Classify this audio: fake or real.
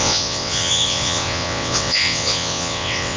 fake